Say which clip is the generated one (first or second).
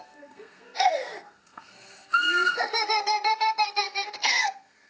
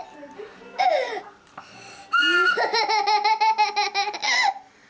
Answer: first